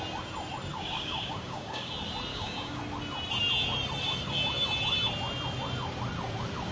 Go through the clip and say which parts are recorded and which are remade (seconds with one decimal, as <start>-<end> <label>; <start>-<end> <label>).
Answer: 0.0-0.7 recorded; 0.7-1.9 remade; 1.9-2.3 recorded; 2.3-2.8 remade; 2.8-6.7 recorded